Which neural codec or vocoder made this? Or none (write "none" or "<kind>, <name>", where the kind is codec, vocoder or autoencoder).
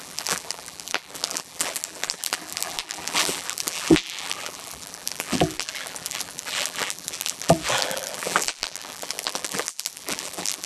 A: vocoder, BigVGAN v2